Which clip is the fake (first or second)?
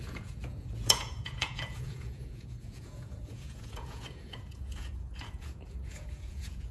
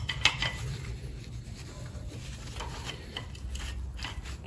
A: first